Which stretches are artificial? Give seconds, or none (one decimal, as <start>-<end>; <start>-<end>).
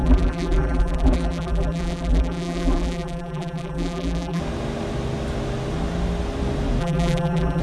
0.0-4.4; 6.8-7.6